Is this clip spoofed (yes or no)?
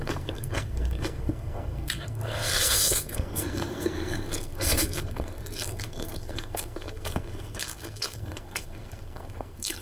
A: yes